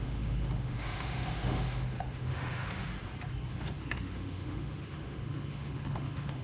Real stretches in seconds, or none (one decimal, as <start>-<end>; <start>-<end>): 2.9-3.5